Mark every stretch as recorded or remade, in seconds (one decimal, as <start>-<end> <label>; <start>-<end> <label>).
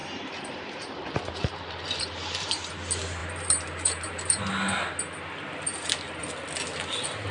0.0-2.7 remade; 2.7-3.2 recorded; 3.2-4.4 remade; 4.4-7.3 recorded